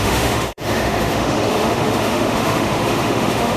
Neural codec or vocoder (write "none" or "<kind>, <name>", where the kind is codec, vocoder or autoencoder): autoencoder, DAC-VAE